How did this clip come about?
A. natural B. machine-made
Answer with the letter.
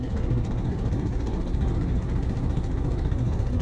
B